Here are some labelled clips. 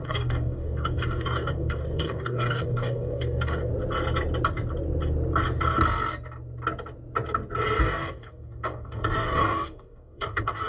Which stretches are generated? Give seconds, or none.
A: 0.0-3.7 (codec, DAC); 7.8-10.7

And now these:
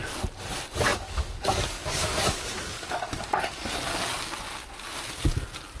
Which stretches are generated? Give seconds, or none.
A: 0.9-4.4 (codec, DAC)

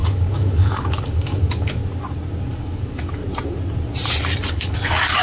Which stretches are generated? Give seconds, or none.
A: 0.0-1.8 (codec, DAC); 2.5-3.2; 4.5-5.2

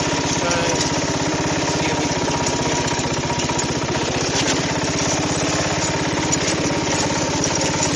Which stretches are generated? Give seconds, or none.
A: none

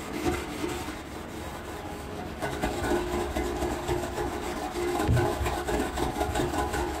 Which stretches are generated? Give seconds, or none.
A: 0.0-0.6 (codec, DAC); 1.8-7.0